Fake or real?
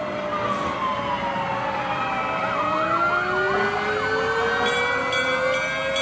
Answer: real